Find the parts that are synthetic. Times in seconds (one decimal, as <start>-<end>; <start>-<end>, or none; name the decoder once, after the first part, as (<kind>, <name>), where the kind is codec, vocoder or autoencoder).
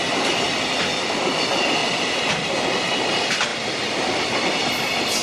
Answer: 1.8-2.5 (vocoder, BigVGAN v2)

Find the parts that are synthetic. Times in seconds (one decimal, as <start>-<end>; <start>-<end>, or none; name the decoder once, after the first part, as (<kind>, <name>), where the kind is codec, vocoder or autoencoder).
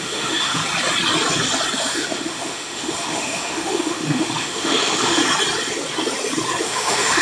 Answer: 0.0-0.6 (autoencoder, DAC-VAE); 1.8-5.2; 6.6-7.2